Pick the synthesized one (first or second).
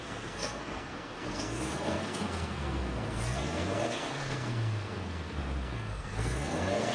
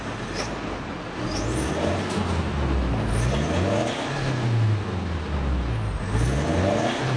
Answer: first